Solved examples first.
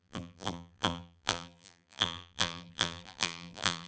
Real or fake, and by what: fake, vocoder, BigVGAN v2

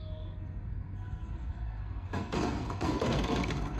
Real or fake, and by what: fake, codec, SNAC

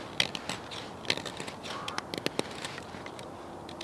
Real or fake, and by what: real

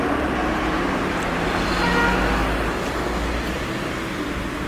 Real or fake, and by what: real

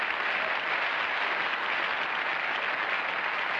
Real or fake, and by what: real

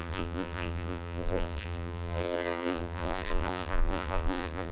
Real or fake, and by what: fake, vocoder, BigVGAN v2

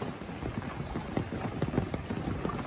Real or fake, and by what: real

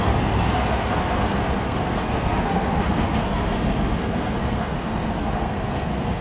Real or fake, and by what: fake, codec, SNAC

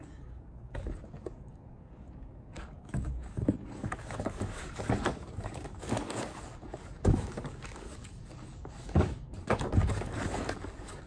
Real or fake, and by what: fake, codec, DAC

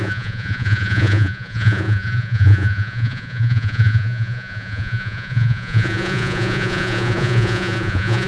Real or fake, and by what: fake, vocoder, Vocos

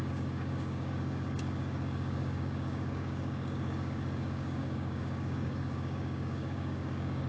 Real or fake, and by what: fake, codec, DAC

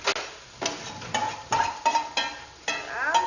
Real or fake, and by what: real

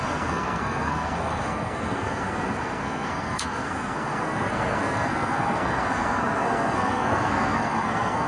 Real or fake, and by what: fake, codec, SNAC